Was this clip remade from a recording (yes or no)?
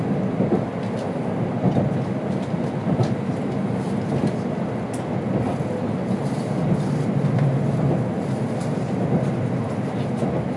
no